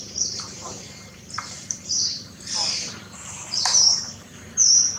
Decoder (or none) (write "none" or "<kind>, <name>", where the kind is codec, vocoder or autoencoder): vocoder, BigVGAN v2